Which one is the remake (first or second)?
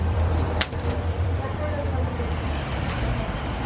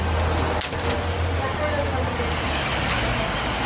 first